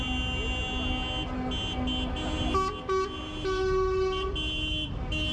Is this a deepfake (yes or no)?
no